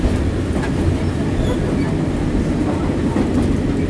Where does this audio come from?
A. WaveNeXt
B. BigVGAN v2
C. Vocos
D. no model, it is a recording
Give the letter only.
D